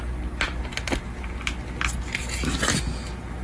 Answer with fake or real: real